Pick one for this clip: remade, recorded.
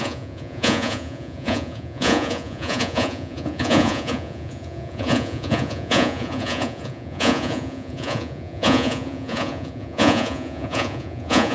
remade